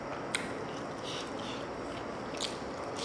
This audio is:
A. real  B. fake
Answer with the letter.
A